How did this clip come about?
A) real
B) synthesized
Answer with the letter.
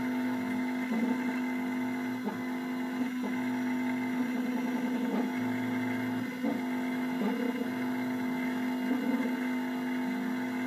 A